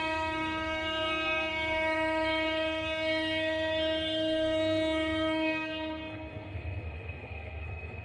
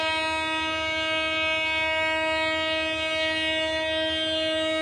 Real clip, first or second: second